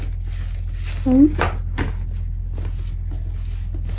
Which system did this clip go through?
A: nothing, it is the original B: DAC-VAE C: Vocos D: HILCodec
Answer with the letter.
A